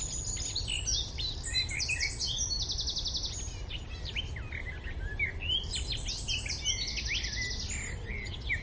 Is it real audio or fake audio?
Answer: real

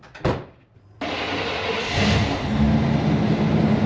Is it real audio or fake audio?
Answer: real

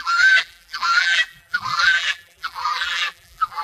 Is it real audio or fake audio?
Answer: fake